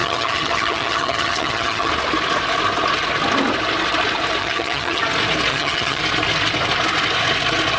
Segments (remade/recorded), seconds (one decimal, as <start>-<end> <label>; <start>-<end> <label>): 0.0-1.9 remade; 1.9-4.4 recorded; 4.4-5.0 remade; 5.0-5.5 recorded; 5.5-6.0 remade; 6.0-7.8 recorded